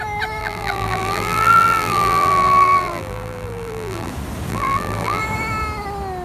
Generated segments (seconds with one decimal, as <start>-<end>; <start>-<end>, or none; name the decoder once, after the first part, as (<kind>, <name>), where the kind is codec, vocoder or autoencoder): 0.4-4.1 (vocoder, BigVGAN v2); 4.5-5.2